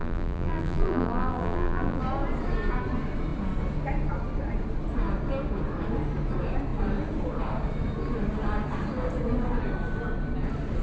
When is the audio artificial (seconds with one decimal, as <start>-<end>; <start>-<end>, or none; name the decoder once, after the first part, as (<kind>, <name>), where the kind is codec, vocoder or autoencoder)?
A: 0.0-2.0 (vocoder, BigVGAN v2)